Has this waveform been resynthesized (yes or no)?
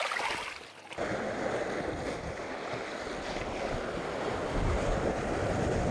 no